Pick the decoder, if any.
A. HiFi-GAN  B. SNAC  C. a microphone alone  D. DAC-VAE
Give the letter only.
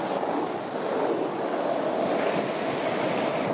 C